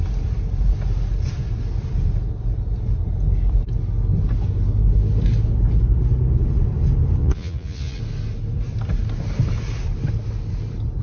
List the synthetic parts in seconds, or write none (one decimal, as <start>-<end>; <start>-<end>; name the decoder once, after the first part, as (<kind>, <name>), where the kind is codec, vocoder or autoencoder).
7.2-8.0 (vocoder, Vocos)